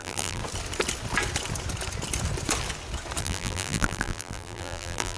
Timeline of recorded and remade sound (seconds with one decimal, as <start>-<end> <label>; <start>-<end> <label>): 0.0-0.4 remade; 0.4-3.2 recorded; 3.2-5.2 remade